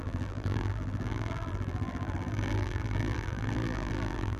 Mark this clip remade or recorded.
remade